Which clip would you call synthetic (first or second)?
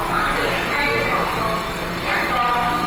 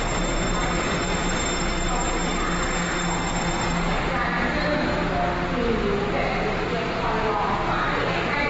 first